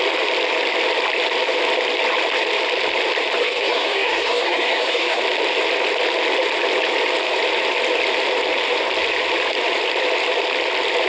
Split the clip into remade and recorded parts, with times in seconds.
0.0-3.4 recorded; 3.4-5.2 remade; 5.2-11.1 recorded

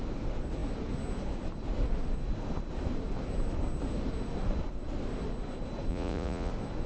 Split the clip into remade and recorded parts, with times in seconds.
0.0-5.9 recorded; 5.9-6.5 remade; 6.5-6.9 recorded

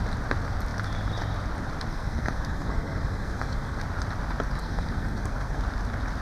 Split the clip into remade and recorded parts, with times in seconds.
0.0-1.9 recorded; 1.9-3.8 remade; 3.8-4.6 recorded; 4.6-5.6 remade; 5.6-6.2 recorded

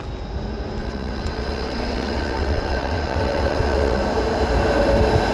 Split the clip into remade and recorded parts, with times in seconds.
0.0-0.8 recorded; 0.8-4.0 remade; 4.0-5.3 recorded

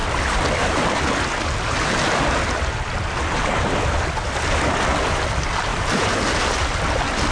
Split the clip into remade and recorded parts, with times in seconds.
0.0-5.7 recorded; 5.7-6.2 remade; 6.2-7.3 recorded

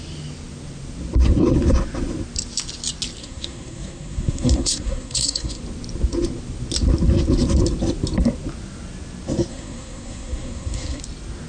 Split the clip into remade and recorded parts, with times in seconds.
0.0-3.2 recorded; 3.2-5.6 remade; 5.6-9.5 recorded; 9.5-11.0 remade; 11.0-11.5 recorded